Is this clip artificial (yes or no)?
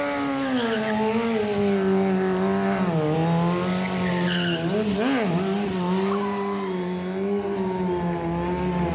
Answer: no